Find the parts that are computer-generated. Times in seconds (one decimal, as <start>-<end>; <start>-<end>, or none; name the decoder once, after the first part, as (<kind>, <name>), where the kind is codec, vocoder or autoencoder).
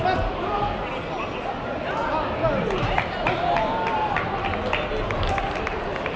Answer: none